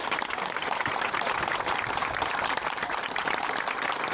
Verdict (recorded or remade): remade